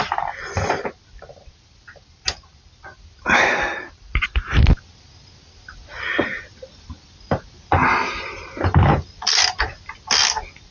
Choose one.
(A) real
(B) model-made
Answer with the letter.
A